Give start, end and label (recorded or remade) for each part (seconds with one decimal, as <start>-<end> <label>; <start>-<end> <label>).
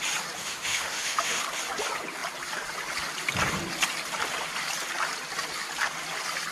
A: 0.0-0.4 recorded; 0.4-1.4 remade; 1.4-6.5 recorded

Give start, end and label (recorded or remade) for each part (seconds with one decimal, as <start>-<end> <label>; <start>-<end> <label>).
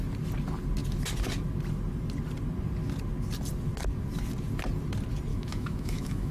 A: 0.0-5.3 recorded; 5.3-6.3 remade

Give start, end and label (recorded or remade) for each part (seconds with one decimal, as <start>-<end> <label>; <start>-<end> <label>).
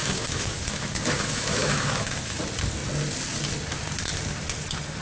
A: 0.0-2.4 remade; 2.4-5.0 recorded